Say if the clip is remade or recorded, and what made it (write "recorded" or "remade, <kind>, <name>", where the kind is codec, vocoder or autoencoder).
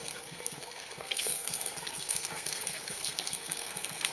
remade, codec, SNAC